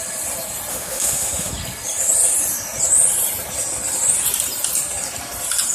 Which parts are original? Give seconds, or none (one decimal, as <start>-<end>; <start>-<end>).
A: 0.0-0.7; 1.5-5.7